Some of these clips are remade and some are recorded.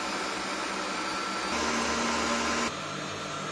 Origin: recorded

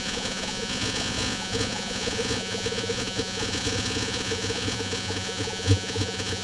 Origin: remade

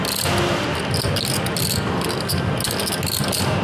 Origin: recorded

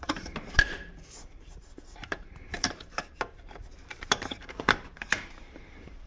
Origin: remade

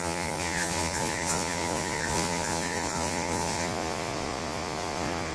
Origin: remade